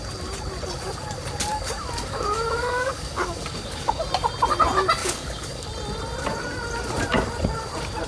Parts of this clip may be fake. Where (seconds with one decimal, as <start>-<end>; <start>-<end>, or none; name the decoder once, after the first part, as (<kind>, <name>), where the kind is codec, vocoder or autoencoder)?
1.5-4.0 (codec, DAC); 5.0-5.7